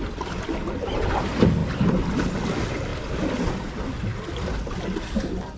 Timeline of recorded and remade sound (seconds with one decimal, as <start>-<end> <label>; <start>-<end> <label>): 0.0-1.2 remade; 1.2-1.6 recorded; 1.6-2.3 remade; 2.3-2.9 recorded; 2.9-4.2 remade; 4.2-5.6 recorded